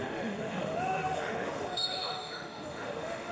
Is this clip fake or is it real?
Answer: fake